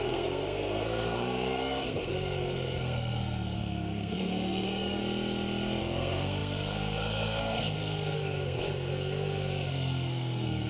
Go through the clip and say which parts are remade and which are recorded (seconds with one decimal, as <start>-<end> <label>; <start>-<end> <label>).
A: 0.0-5.0 remade; 5.0-5.8 recorded; 5.8-10.7 remade